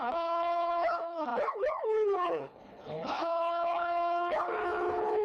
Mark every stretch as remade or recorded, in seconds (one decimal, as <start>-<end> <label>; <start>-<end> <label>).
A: 0.0-5.2 remade